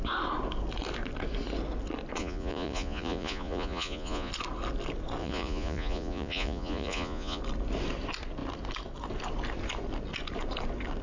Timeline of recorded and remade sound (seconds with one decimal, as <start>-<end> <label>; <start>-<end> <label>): 0.0-2.2 recorded; 2.2-4.3 remade; 4.3-5.2 recorded; 5.2-7.4 remade; 7.4-11.0 recorded